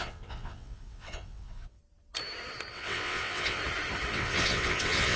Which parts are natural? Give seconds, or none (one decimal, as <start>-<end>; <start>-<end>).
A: 1.8-2.7; 3.6-4.1